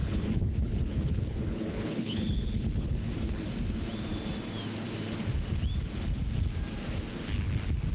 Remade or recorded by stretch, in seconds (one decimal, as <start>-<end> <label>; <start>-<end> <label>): 0.0-3.1 remade; 3.1-7.9 recorded